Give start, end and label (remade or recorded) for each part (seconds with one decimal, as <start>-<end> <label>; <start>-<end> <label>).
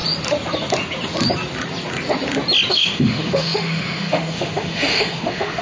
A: 0.0-2.7 recorded; 2.7-5.6 remade